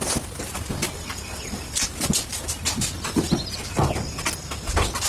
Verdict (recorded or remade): recorded